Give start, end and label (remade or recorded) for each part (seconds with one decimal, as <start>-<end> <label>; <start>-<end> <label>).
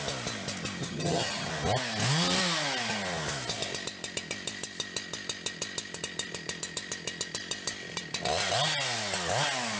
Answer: 0.0-0.8 recorded; 0.8-1.5 remade; 1.5-9.8 recorded